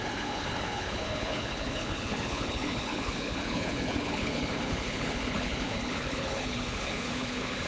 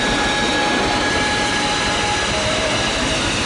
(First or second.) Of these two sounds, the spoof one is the first